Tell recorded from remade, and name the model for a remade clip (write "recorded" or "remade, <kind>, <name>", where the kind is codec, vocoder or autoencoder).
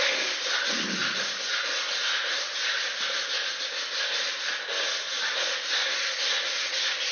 recorded